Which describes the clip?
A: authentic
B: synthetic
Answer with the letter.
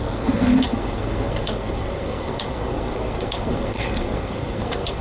B